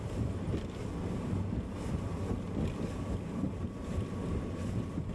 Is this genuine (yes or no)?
yes